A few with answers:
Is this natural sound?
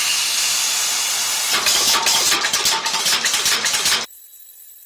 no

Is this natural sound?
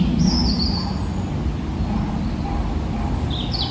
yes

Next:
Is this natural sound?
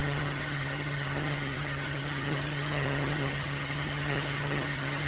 no